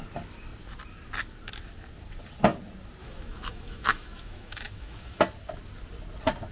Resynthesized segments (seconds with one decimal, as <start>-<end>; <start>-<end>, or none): 3.0-5.2